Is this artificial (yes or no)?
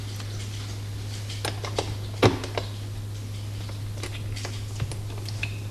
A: no